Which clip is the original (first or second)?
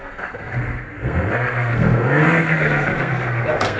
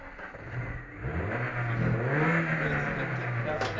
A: second